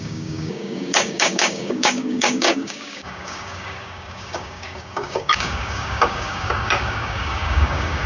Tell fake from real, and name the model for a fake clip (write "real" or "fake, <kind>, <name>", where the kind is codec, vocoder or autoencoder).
fake, codec, DAC